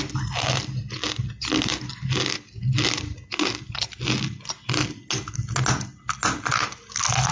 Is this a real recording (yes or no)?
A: yes